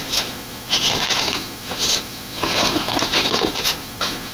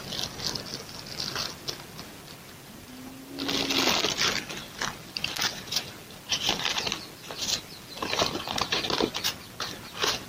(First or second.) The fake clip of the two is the first